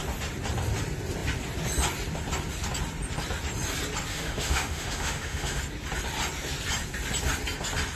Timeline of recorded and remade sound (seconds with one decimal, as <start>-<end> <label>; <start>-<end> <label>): 0.0-4.1 recorded; 4.1-5.6 remade; 5.6-8.0 recorded